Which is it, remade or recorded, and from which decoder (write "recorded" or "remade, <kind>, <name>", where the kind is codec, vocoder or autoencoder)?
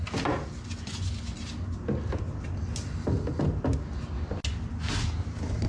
recorded